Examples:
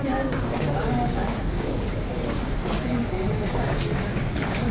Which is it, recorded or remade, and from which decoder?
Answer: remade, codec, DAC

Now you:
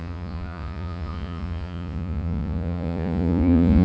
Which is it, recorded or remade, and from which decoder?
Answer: remade, vocoder, Vocos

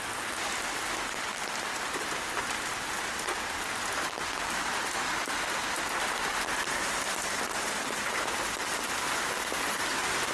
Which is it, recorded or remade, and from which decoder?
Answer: recorded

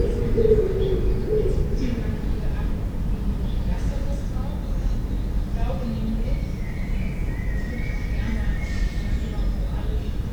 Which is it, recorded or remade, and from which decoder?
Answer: recorded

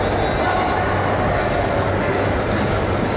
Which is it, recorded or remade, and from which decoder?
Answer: recorded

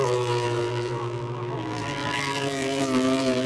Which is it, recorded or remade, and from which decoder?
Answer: remade, vocoder, BigVGAN v2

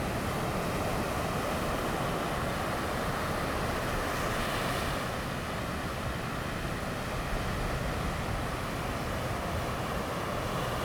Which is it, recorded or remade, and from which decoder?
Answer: recorded